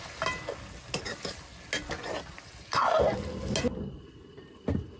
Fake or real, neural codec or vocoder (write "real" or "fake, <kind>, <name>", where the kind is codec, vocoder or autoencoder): real